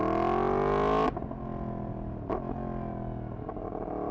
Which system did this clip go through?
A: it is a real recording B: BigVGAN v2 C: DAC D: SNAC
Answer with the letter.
A